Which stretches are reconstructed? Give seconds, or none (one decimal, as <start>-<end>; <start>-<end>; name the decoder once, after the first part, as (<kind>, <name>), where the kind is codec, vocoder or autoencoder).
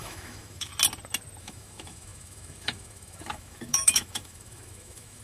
0.0-0.7 (autoencoder, DAC-VAE); 1.4-5.2